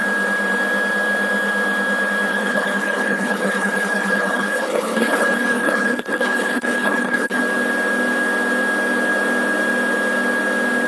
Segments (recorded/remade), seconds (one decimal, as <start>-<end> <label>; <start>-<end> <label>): 0.0-2.3 recorded; 2.3-7.4 remade; 7.4-10.9 recorded